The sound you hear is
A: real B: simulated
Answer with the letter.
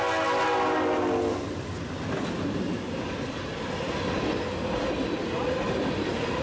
A